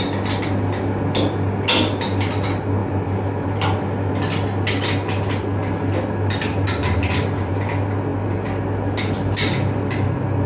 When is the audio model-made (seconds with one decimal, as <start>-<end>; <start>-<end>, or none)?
none